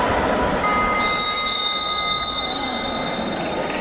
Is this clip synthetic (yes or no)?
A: no